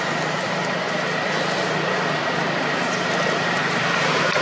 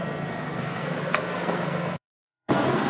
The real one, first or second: first